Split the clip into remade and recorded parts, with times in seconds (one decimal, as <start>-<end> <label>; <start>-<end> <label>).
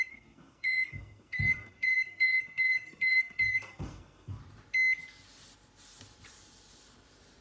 0.0-4.4 remade; 4.4-7.4 recorded